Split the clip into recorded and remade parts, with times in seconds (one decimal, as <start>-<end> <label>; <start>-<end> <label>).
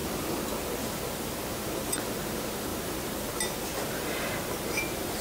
0.0-2.7 recorded; 2.7-5.2 remade